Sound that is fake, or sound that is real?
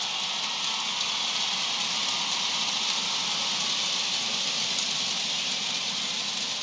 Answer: real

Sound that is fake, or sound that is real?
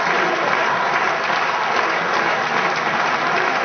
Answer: real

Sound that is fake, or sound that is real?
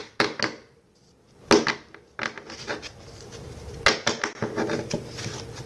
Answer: real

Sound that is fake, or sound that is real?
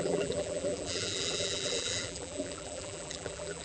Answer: fake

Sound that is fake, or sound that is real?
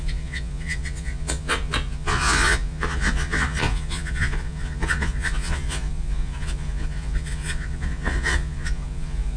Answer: fake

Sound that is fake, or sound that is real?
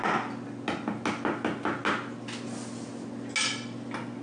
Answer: real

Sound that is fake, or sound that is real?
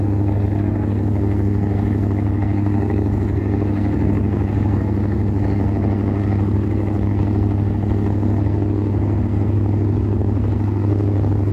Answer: fake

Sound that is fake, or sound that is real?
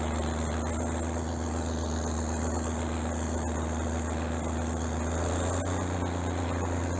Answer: real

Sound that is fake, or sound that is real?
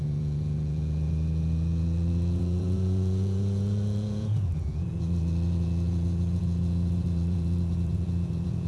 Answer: fake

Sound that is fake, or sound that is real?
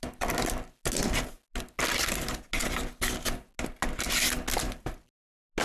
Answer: real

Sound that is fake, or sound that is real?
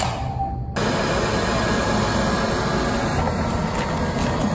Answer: real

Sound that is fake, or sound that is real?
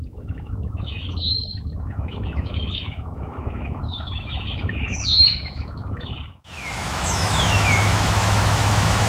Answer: fake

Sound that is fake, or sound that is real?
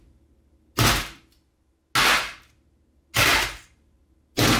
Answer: real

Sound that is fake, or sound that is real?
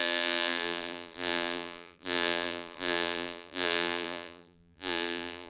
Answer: fake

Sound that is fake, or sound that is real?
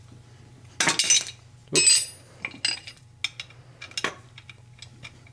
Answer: real